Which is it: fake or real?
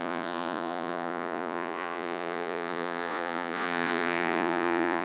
fake